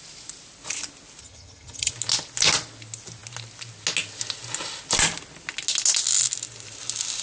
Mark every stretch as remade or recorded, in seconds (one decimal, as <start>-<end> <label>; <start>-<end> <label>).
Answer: 0.0-1.2 recorded; 1.2-1.9 remade; 1.9-7.2 recorded

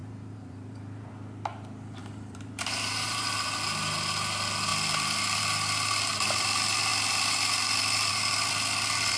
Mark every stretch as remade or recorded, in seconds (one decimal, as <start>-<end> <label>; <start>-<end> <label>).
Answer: 0.0-1.1 remade; 1.1-2.0 recorded; 2.0-3.3 remade; 3.3-9.2 recorded

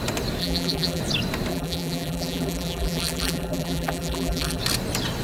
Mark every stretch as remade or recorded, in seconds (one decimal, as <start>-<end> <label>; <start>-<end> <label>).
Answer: 0.0-0.4 recorded; 0.4-1.0 remade; 1.0-1.5 recorded; 1.5-4.6 remade; 4.6-5.2 recorded

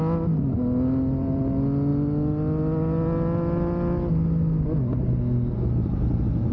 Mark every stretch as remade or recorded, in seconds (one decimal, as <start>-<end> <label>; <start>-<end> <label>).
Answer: 0.0-6.5 recorded

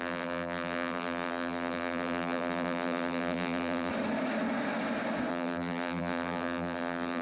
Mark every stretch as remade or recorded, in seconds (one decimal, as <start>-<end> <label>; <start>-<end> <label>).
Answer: 0.0-3.9 remade; 3.9-5.3 recorded; 5.3-7.2 remade